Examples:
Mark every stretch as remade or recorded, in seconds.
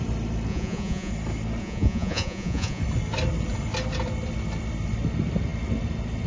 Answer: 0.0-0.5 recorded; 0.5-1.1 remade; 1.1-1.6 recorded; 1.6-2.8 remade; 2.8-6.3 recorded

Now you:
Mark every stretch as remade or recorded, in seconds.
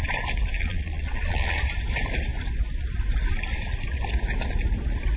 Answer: 0.0-0.6 recorded; 0.6-1.6 remade; 1.6-5.2 recorded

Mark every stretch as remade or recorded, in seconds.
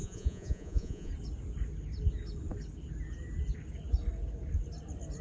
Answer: 0.0-1.1 remade; 1.1-5.2 recorded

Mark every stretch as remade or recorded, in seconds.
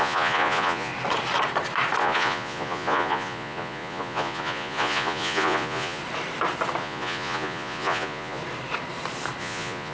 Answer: 0.0-0.9 remade; 0.9-2.0 recorded; 2.0-6.0 remade; 6.0-6.8 recorded; 6.8-8.4 remade; 8.4-9.4 recorded; 9.4-9.9 remade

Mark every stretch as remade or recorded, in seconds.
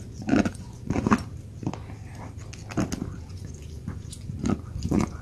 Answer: 0.0-1.1 remade; 1.1-3.3 recorded; 3.3-5.2 remade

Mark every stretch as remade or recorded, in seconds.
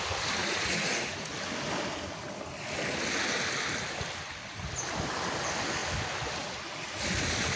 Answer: 0.0-0.4 recorded; 0.4-1.3 remade; 1.3-7.6 recorded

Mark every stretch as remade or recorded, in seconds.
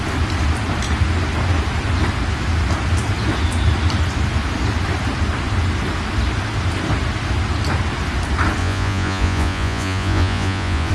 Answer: 0.0-8.6 recorded; 8.6-10.9 remade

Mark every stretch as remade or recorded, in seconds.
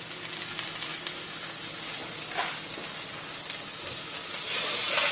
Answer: 0.0-5.1 recorded